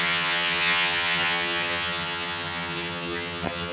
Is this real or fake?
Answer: fake